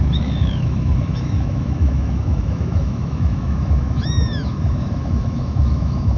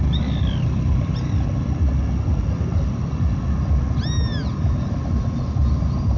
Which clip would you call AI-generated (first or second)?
first